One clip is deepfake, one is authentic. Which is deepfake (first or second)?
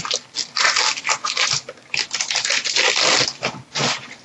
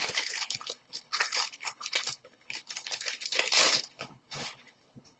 second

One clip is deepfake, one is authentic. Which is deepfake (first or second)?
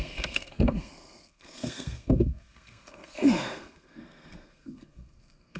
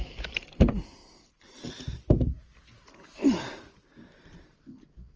first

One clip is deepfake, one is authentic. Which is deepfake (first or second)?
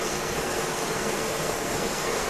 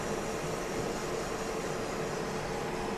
first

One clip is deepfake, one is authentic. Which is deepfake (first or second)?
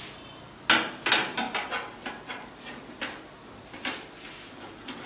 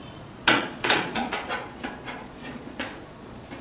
second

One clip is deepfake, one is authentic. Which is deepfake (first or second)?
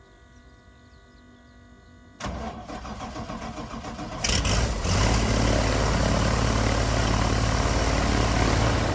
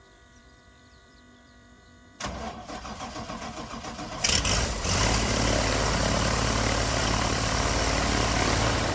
second